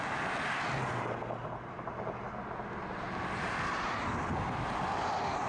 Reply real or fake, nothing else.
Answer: real